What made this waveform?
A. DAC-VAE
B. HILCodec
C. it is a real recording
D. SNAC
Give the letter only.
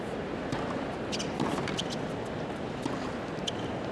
C